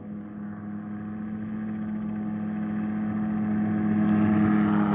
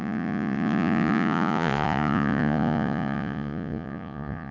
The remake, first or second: second